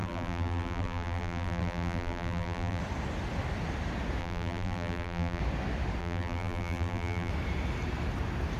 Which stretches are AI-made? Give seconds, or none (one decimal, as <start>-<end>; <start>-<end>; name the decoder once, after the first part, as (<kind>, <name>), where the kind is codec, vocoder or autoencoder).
0.0-2.8 (vocoder, BigVGAN v2); 4.2-5.4; 6.0-7.3